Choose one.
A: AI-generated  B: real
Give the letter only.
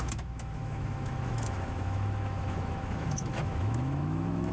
A